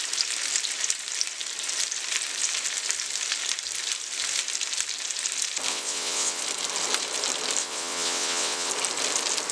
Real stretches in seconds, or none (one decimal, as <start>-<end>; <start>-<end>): 0.0-5.7; 6.4-7.6; 8.7-9.5